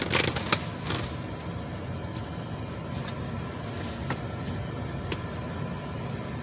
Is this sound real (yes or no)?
yes